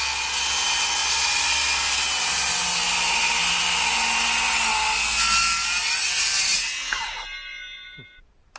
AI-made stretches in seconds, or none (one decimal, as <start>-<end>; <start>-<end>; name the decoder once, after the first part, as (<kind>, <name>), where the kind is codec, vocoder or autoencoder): none